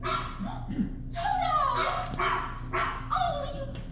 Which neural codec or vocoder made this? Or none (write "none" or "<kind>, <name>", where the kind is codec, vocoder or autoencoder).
none